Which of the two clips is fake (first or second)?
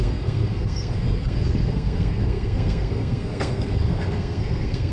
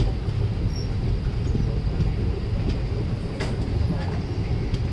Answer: first